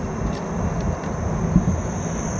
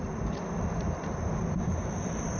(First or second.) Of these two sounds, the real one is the first